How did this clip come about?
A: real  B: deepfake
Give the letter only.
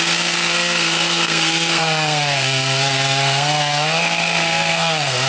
B